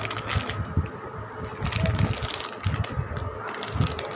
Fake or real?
real